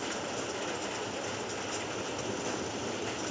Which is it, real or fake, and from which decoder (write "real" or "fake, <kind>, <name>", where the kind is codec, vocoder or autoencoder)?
real